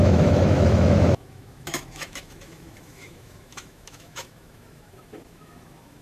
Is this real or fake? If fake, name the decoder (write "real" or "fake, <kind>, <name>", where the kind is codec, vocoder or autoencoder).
fake, autoencoder, DAC-VAE